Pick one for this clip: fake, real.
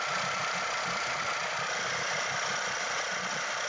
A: real